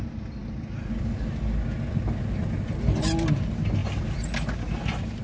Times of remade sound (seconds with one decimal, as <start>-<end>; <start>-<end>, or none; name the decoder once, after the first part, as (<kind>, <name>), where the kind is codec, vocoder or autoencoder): none